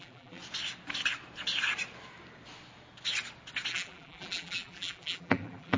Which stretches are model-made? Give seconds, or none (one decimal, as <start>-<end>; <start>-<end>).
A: 0.0-0.4; 3.7-5.8